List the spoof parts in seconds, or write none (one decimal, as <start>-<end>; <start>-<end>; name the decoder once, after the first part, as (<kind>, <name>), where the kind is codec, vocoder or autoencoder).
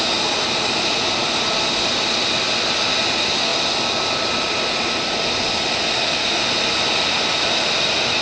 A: none